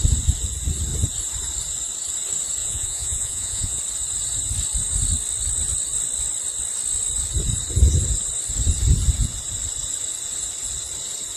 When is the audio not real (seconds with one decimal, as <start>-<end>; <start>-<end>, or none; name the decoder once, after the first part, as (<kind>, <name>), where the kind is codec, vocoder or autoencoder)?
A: 2.6-3.8 (vocoder, Vocos)